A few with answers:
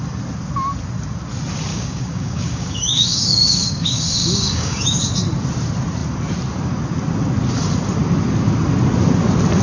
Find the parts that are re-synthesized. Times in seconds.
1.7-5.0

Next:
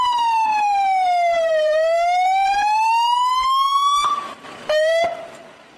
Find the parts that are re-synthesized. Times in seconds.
0.5-2.9; 4.6-5.8

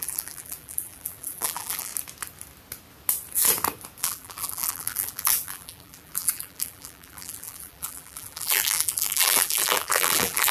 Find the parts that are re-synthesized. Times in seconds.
0.0-1.9; 4.0-10.5

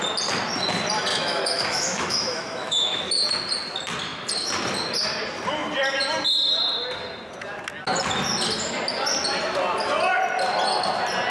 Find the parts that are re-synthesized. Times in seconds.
1.1-3.0

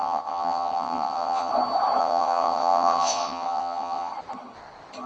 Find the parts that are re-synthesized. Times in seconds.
0.0-1.5; 2.0-4.1

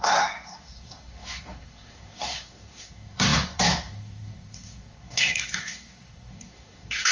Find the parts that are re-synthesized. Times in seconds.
0.0-7.1